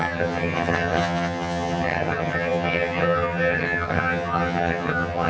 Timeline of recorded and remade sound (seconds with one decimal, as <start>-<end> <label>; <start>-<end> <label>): 0.0-5.3 remade